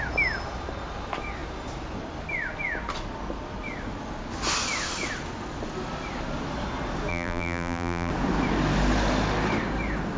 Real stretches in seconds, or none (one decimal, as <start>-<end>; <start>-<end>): 0.0-7.1; 8.1-10.2